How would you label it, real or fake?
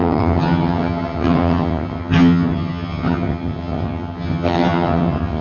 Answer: fake